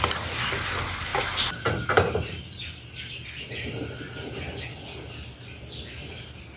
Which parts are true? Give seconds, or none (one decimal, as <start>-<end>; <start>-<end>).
0.0-6.6